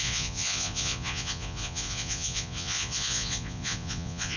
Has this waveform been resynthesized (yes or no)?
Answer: yes